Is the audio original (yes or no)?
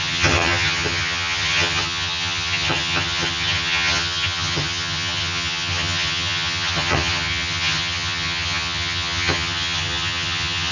no